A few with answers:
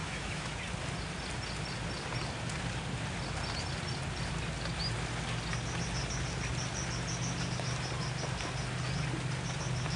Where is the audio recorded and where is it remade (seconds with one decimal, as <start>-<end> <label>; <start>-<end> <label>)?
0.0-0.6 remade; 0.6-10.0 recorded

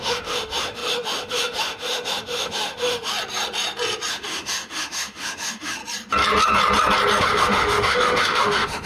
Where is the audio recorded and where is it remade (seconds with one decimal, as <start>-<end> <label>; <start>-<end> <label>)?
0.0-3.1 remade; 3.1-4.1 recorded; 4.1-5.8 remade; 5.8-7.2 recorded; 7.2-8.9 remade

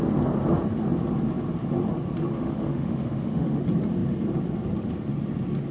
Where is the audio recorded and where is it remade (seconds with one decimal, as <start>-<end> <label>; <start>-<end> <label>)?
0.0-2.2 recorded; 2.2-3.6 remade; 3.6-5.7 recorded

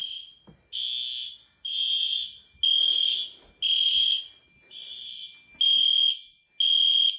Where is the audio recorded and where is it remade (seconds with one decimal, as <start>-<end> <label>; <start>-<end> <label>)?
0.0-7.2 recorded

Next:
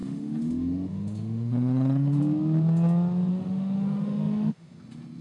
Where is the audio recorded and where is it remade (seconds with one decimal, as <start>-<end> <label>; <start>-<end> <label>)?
0.0-2.2 remade; 2.2-3.3 recorded; 3.3-4.8 remade; 4.8-5.2 recorded

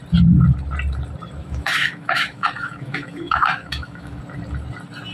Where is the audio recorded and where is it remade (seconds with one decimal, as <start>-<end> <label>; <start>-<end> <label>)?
0.0-1.4 recorded; 1.4-4.2 remade; 4.2-5.1 recorded